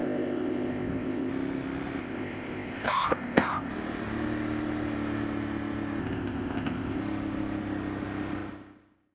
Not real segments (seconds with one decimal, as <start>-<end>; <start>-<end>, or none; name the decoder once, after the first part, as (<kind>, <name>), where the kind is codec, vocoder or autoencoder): 0.0-1.3 (codec, ZipCodec); 2.0-3.7; 6.0-7.0